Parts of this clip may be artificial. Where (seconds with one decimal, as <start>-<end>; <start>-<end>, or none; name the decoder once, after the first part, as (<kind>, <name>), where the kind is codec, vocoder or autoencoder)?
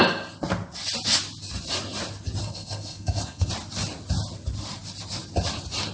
2.4-3.5 (codec, SNAC)